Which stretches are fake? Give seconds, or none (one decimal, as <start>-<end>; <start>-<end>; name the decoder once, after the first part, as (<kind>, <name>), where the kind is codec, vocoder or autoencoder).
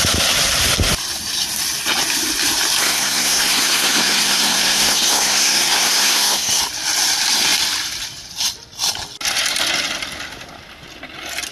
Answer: 2.8-6.6 (codec, SNAC)